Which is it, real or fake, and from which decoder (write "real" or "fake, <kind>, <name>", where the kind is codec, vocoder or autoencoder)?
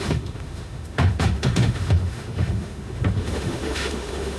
fake, autoencoder, DAC-VAE